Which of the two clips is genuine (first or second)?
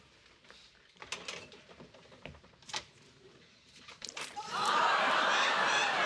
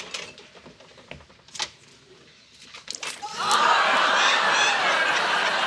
second